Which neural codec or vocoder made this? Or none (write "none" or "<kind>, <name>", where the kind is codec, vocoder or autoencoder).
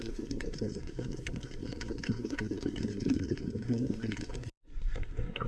codec, SNAC